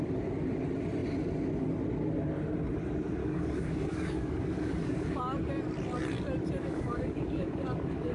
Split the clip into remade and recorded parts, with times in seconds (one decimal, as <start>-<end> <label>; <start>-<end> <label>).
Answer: 0.0-3.2 recorded; 3.2-5.2 remade; 5.2-6.6 recorded; 6.6-8.1 remade